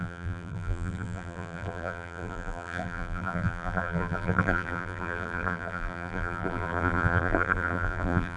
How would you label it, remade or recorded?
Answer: remade